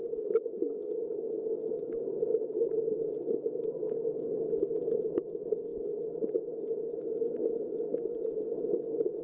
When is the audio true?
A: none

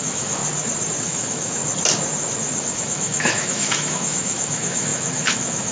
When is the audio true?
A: 0.4-1.0; 1.6-2.6

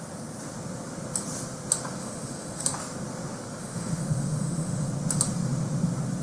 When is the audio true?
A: 0.0-2.0; 2.6-3.6; 4.9-6.2

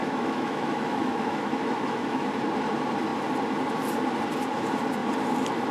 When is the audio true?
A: 2.4-5.7

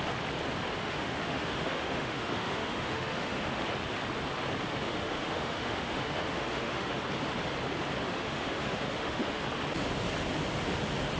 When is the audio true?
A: 0.0-0.8; 3.6-4.7; 7.0-8.0; 9.4-11.2